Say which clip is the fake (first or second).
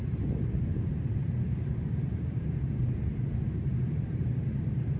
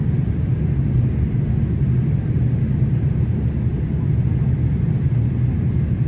first